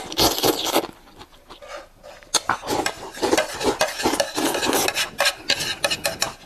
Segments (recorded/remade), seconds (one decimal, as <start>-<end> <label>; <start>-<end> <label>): 0.0-6.5 recorded